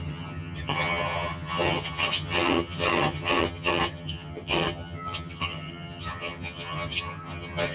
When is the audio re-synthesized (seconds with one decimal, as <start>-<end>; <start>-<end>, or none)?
0.0-7.7